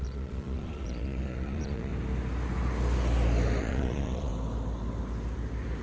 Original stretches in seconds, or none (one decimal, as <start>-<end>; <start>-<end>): 1.9-3.6; 4.3-5.8